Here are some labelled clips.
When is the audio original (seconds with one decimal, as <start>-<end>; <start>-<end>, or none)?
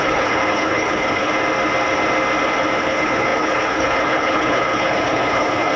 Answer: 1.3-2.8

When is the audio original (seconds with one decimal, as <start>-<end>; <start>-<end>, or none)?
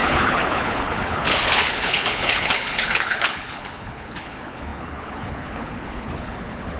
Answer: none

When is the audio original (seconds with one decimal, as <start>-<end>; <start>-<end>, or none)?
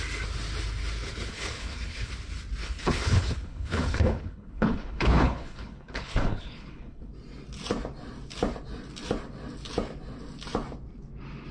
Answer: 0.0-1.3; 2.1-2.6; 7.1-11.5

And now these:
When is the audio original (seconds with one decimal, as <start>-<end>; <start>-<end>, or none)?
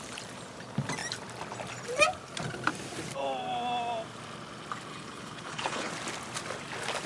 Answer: 0.0-4.9; 5.9-7.1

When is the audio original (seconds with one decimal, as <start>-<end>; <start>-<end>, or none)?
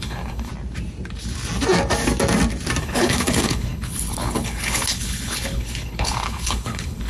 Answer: 0.5-2.8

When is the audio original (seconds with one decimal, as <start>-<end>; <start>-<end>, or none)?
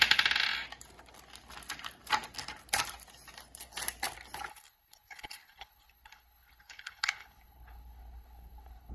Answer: 0.0-4.5